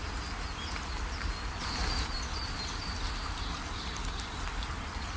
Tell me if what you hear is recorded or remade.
recorded